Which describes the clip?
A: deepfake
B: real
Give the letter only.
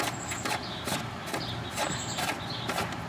B